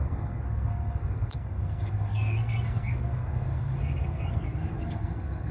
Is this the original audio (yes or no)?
no